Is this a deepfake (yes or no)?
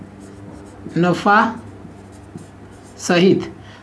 no